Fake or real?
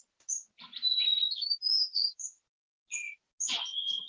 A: real